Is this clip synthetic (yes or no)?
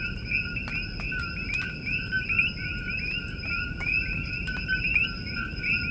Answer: no